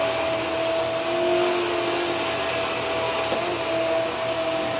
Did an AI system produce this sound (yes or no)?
no